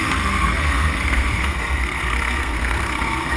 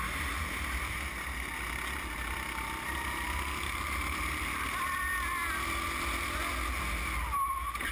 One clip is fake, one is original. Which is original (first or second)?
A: second